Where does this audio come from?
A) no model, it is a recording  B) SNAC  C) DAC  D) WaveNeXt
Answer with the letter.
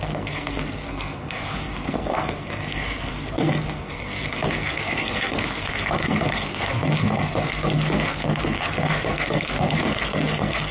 B